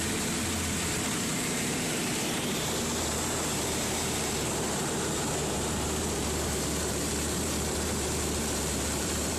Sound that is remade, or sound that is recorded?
remade